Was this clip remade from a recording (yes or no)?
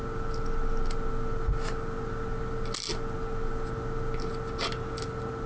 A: no